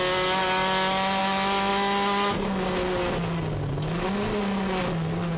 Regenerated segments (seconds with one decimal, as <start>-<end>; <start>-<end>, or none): none